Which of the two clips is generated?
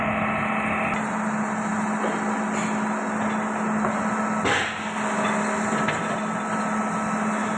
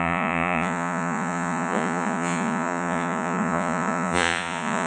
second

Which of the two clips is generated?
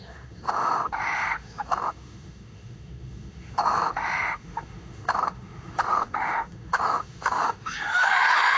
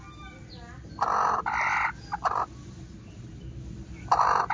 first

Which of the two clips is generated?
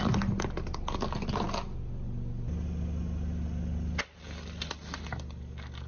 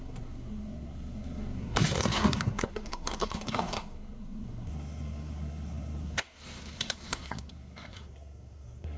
second